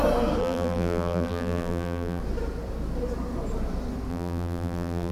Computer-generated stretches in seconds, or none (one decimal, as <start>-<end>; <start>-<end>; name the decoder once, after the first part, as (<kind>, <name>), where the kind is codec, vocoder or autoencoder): 0.4-2.2 (vocoder, BigVGAN v2); 4.1-5.1